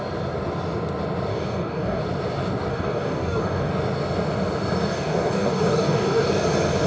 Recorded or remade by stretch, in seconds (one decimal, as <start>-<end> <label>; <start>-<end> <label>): 0.0-1.3 recorded; 1.3-2.0 remade; 2.0-2.7 recorded; 2.7-3.7 remade; 3.7-4.9 recorded; 4.9-6.3 remade; 6.3-6.9 recorded